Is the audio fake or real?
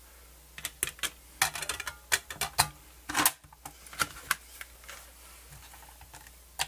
real